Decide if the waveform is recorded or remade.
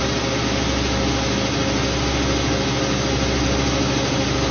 recorded